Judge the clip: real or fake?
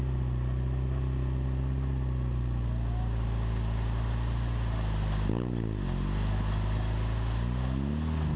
real